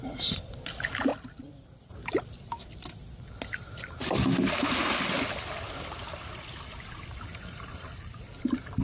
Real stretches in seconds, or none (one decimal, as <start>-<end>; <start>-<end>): 0.0-8.8